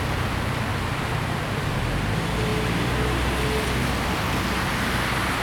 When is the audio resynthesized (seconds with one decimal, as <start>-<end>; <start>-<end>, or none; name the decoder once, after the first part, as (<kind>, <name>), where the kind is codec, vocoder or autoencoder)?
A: 0.7-1.7 (vocoder, BigVGAN v2)